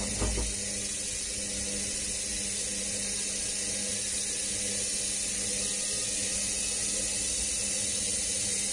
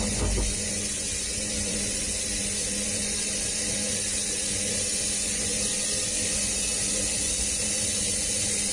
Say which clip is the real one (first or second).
first